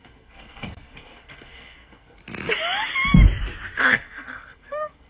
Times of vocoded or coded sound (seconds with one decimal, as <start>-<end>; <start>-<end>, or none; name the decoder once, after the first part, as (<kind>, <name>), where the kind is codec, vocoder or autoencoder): 0.0-2.2 (codec, SNAC); 3.8-5.1